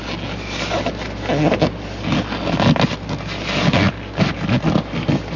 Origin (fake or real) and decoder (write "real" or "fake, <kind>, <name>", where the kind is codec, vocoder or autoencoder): real